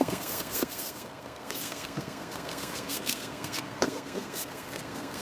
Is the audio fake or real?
fake